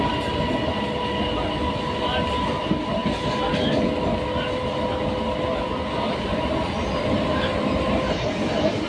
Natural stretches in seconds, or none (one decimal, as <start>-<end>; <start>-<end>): 0.0-8.9